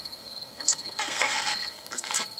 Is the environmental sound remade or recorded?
remade